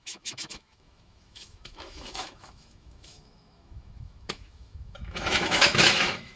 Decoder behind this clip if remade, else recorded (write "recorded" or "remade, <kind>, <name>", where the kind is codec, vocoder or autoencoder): remade, autoencoder, DAC-VAE